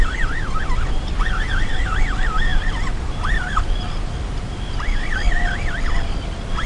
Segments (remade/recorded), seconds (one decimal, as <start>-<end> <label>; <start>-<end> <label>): 0.0-6.7 recorded